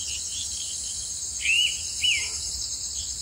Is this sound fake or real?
real